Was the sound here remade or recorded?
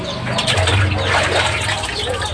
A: recorded